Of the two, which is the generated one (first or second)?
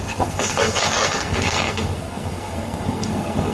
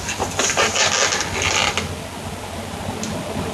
first